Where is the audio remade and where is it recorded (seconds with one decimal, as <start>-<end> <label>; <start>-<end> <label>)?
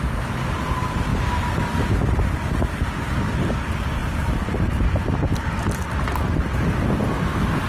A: 0.0-4.0 recorded; 4.0-6.0 remade; 6.0-6.5 recorded; 6.5-7.7 remade